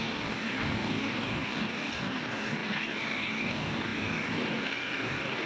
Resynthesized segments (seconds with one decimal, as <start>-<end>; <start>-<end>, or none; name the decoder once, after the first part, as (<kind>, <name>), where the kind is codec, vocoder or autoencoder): 0.0-5.5 (codec, DAC)